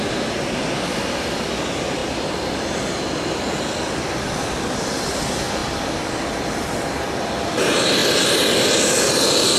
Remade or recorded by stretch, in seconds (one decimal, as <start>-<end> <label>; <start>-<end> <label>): 0.0-9.6 recorded

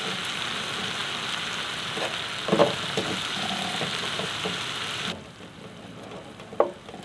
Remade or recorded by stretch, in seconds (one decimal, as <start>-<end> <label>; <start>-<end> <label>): 0.0-7.0 recorded

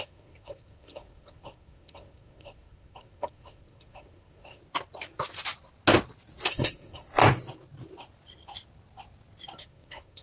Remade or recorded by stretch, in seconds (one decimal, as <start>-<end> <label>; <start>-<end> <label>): 0.0-4.6 remade; 4.6-6.5 recorded; 6.5-7.2 remade; 7.2-9.6 recorded; 9.6-10.2 remade